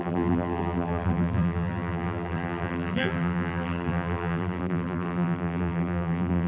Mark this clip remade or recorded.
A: remade